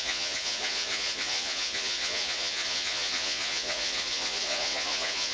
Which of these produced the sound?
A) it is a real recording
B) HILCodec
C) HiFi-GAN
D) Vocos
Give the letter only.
D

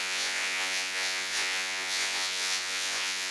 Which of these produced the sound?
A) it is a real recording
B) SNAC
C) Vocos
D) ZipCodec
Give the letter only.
C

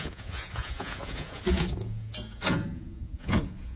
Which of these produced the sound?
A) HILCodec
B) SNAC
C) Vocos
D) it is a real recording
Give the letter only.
C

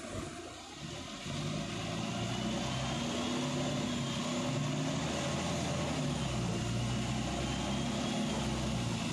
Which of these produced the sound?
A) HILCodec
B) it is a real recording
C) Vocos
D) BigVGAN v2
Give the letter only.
B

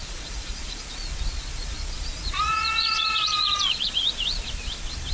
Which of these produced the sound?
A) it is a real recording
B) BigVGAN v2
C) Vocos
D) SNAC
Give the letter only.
C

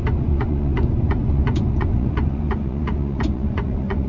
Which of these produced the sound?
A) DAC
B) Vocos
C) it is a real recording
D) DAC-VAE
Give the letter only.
B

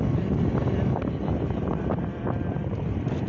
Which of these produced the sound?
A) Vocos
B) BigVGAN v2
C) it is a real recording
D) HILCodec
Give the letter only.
C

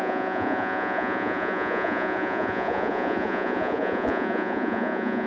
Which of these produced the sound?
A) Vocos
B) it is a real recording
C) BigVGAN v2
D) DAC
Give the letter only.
A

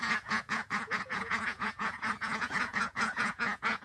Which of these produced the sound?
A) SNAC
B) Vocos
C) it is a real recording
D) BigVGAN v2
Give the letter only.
B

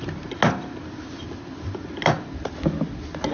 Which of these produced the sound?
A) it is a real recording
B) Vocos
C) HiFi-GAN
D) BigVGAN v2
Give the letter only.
A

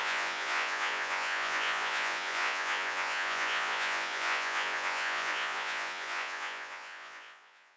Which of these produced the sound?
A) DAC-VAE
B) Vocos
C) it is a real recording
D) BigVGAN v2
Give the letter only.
B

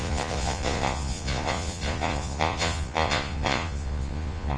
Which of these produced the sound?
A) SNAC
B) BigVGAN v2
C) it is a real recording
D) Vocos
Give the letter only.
D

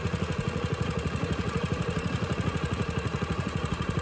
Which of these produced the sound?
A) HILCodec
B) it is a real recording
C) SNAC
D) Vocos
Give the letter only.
D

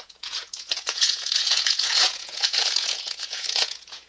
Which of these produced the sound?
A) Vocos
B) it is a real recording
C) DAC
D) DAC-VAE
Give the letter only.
A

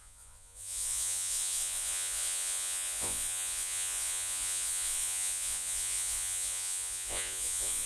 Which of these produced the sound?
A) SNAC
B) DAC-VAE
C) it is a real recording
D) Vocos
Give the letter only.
D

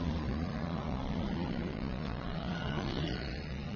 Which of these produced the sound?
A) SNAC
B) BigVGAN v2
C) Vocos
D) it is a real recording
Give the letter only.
C